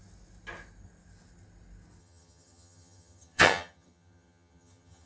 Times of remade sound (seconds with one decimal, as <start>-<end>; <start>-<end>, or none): 2.0-5.1